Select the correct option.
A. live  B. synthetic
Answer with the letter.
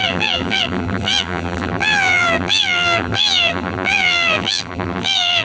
B